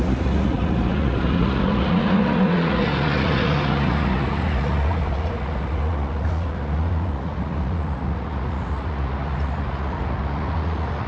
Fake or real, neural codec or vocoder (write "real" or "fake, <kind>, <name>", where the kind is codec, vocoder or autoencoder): fake, vocoder, Vocos